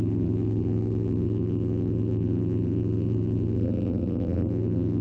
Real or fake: fake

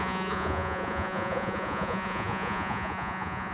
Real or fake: fake